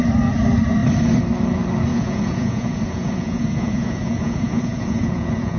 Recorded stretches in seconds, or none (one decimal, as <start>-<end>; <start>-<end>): 0.0-1.9